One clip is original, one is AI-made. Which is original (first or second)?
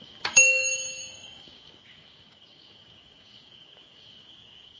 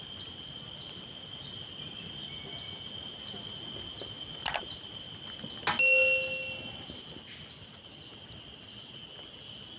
second